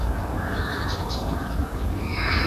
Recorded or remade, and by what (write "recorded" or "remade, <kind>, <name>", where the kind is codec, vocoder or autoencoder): remade, codec, DAC